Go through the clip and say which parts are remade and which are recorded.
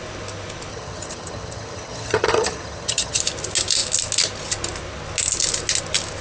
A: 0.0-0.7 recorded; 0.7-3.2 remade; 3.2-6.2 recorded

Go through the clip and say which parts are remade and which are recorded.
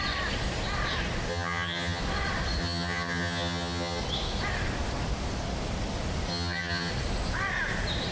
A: 0.0-1.3 recorded; 1.3-2.0 remade; 2.0-2.6 recorded; 2.6-4.0 remade; 4.0-6.3 recorded; 6.3-6.9 remade; 6.9-8.1 recorded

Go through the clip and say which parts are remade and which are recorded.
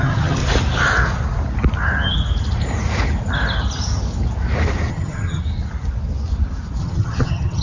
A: 0.0-0.4 remade; 0.4-4.9 recorded; 4.9-5.4 remade; 5.4-6.8 recorded; 6.8-7.6 remade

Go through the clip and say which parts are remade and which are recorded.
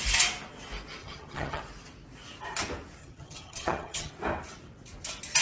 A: 0.0-1.0 recorded; 1.0-1.6 remade; 1.6-3.0 recorded; 3.0-4.1 remade; 4.1-5.4 recorded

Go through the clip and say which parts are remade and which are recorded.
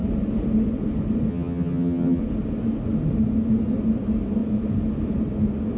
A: 0.0-1.3 recorded; 1.3-2.2 remade; 2.2-5.8 recorded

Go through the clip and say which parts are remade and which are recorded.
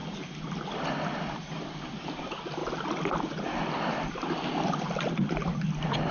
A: 0.0-6.1 recorded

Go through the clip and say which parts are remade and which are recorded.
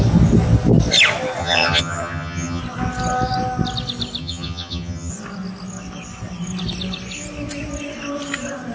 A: 0.0-1.4 recorded; 1.4-2.6 remade; 2.6-4.2 recorded; 4.2-5.1 remade; 5.1-8.7 recorded